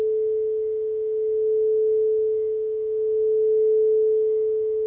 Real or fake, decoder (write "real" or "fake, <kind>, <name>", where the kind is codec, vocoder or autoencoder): real